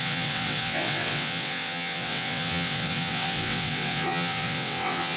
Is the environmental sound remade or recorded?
remade